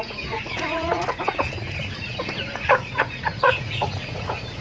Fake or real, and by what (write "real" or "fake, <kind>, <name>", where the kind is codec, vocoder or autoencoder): fake, vocoder, Vocos